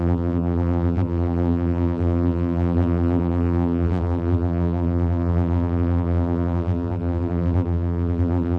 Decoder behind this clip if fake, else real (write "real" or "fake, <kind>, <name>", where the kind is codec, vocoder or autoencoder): fake, vocoder, BigVGAN v2